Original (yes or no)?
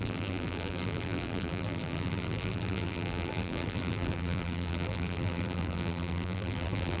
no